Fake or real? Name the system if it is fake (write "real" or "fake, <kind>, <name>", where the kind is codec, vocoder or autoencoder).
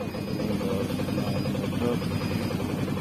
real